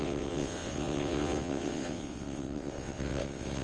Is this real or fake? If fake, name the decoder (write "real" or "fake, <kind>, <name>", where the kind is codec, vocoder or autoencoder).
fake, vocoder, WaveNeXt